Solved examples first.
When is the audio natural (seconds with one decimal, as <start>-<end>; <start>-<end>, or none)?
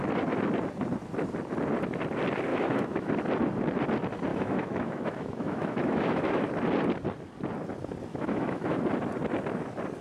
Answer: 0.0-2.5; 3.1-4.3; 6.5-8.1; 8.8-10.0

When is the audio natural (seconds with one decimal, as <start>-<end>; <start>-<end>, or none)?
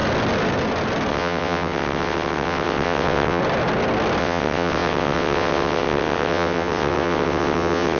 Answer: 0.0-1.1; 3.4-4.2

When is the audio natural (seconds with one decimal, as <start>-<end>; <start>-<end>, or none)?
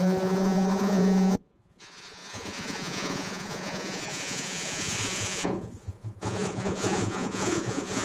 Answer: none